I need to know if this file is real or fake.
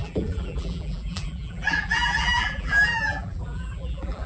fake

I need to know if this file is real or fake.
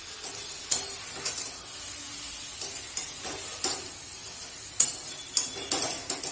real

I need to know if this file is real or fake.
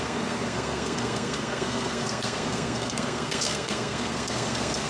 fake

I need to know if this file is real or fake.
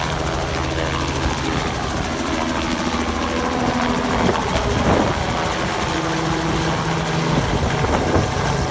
real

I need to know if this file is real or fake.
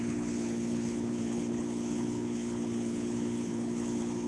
fake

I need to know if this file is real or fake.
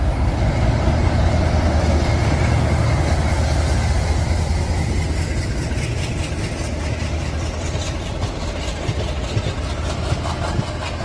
real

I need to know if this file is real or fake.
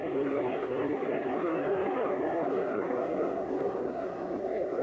fake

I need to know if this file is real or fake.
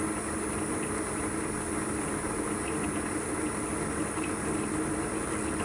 real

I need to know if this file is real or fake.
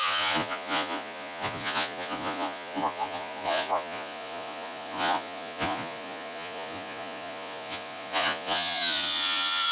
fake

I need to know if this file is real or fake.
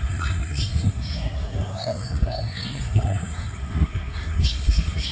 fake